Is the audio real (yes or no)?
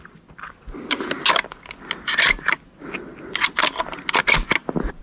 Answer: yes